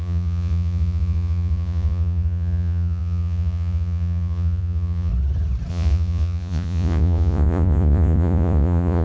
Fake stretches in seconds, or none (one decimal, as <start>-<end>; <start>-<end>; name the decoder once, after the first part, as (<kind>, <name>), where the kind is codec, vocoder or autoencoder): 0.0-5.1 (vocoder, Vocos); 5.7-9.0

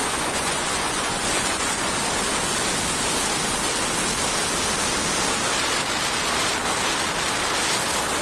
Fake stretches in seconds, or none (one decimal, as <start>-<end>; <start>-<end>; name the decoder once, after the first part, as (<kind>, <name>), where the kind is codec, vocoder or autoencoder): 0.0-1.9 (vocoder, Vocos)

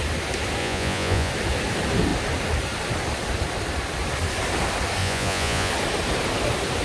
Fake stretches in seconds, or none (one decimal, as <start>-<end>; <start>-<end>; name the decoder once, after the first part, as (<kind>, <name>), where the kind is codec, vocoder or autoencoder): 0.6-1.3 (vocoder, Vocos); 5.0-5.7

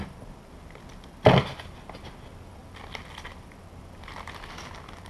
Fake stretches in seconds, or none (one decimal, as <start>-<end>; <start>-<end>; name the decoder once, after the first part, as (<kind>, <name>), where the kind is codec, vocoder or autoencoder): none

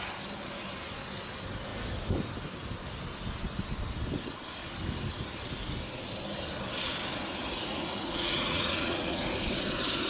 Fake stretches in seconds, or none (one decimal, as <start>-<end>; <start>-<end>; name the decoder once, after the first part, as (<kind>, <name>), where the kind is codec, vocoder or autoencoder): 7.4-9.2 (vocoder, Vocos)

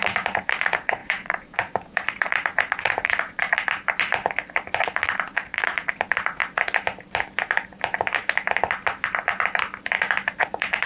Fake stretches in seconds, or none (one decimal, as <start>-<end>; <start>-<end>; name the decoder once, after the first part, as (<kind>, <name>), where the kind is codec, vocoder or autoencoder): 0.0-3.6 (vocoder, Vocos); 4.8-6.4; 10.4-10.9

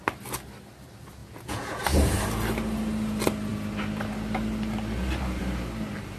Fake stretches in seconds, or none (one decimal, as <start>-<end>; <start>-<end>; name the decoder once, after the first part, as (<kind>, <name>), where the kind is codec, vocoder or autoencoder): 1.2-1.8 (vocoder, Vocos)